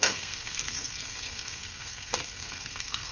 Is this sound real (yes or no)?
no